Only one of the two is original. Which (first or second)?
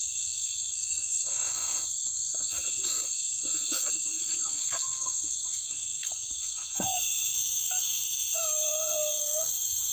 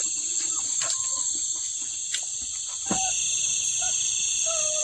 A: second